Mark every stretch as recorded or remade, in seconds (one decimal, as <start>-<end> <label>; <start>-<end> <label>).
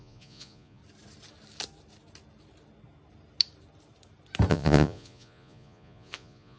0.0-0.8 remade; 0.8-4.5 recorded; 4.5-6.6 remade